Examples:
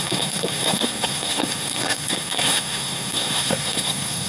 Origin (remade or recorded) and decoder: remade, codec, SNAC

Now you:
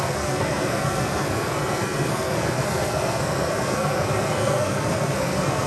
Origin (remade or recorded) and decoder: remade, codec, SNAC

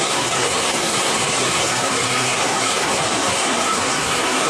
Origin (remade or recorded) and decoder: remade, codec, SNAC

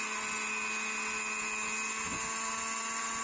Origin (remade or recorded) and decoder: recorded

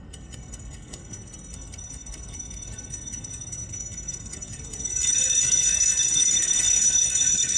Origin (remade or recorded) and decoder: remade, codec, SNAC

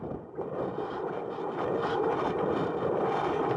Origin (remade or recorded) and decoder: recorded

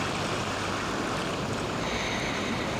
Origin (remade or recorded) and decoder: recorded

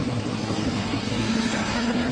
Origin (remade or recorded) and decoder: remade, codec, SNAC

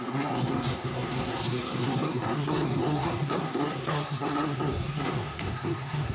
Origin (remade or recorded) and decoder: remade, codec, SNAC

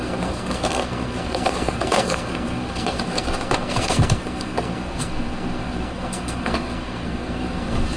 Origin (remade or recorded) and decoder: remade, codec, SNAC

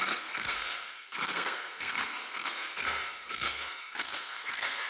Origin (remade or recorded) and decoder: remade, codec, SNAC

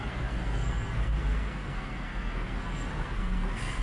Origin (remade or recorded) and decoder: remade, codec, SNAC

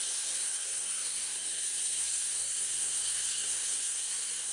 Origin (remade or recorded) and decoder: remade, codec, SNAC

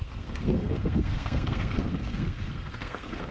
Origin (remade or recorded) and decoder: remade, codec, SNAC